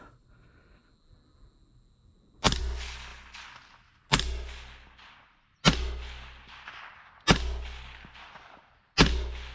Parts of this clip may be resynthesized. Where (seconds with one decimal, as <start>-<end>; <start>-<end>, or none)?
none